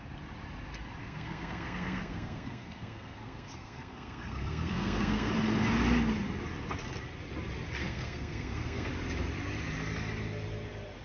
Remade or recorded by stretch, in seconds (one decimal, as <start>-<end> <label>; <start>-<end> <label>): 0.0-1.0 recorded; 1.0-5.3 remade; 5.3-7.8 recorded; 7.8-8.9 remade; 8.9-11.0 recorded